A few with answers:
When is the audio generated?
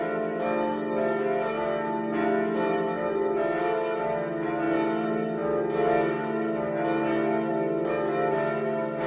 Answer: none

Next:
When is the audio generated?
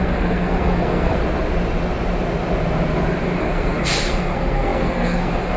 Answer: 0.0-1.2; 3.4-5.6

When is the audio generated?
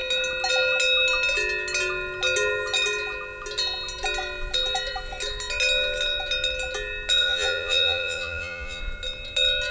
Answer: 7.2-8.8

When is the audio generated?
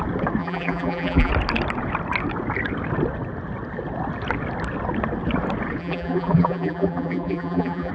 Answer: 0.4-1.3; 5.8-7.9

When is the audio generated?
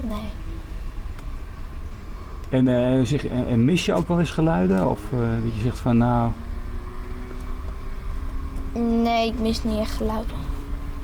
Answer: 0.0-2.4